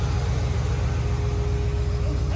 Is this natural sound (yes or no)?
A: yes